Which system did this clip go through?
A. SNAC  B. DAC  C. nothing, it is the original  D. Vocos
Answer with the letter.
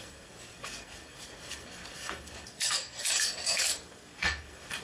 A